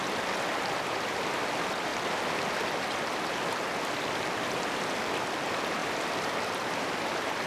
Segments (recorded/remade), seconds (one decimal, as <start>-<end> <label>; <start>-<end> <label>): 0.0-0.8 remade; 0.8-5.8 recorded; 5.8-7.0 remade; 7.0-7.5 recorded